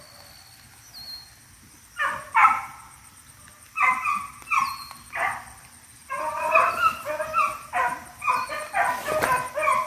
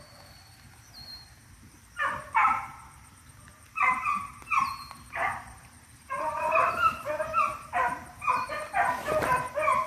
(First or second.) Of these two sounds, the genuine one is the first